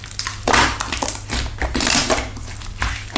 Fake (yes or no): no